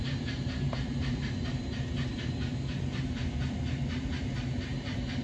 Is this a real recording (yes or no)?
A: no